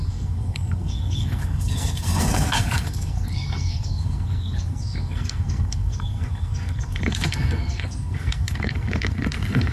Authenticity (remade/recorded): remade